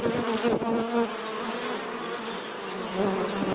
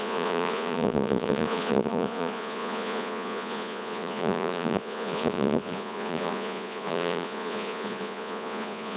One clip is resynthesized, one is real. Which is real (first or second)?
first